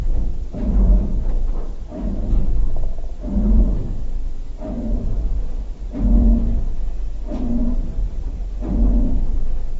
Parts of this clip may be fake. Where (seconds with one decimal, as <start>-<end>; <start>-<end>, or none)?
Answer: 0.0-9.8